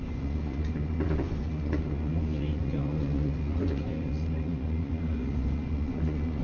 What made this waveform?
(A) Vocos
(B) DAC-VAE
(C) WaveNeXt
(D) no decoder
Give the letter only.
A